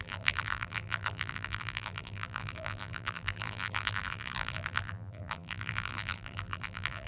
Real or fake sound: fake